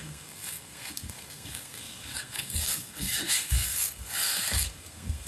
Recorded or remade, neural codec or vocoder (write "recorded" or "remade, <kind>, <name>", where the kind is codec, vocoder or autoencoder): remade, codec, SNAC